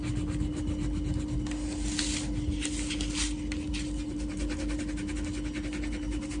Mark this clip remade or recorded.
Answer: recorded